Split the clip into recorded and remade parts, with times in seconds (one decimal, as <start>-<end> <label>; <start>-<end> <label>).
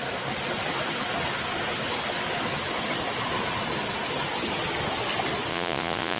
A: 0.0-5.5 recorded; 5.5-6.2 remade